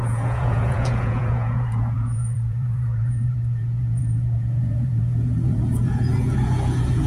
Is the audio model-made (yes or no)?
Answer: yes